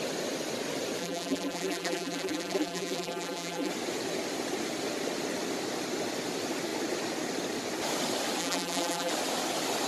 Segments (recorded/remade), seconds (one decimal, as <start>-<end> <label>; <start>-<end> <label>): 0.0-1.0 recorded; 1.0-3.7 remade; 3.7-8.4 recorded; 8.4-9.1 remade; 9.1-9.9 recorded